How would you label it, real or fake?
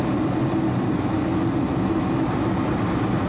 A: real